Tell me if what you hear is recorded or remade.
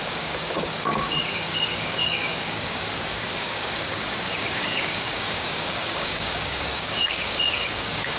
remade